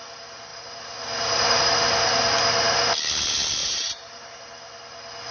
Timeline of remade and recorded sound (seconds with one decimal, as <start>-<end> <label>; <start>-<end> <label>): 0.0-0.5 recorded; 0.5-1.6 remade; 1.6-3.6 recorded; 3.6-4.3 remade; 4.3-5.3 recorded